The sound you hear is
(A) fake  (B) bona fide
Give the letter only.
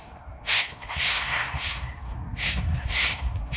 A